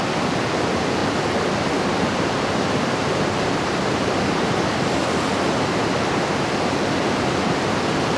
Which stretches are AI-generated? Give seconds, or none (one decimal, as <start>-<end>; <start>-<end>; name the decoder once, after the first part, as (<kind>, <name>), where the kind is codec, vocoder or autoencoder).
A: 0.0-1.0 (vocoder, BigVGAN v2); 2.0-5.0; 5.7-8.2